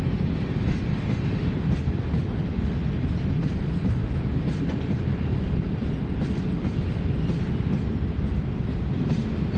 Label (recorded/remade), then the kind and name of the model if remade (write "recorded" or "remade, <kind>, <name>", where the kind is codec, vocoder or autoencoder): recorded